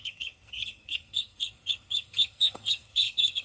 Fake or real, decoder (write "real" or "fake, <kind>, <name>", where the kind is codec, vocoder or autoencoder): fake, codec, SNAC